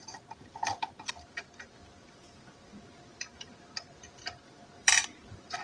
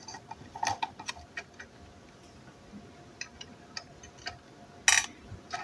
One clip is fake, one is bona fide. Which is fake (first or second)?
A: first